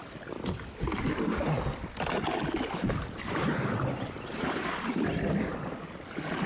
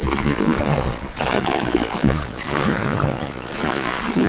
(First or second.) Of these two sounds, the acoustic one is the first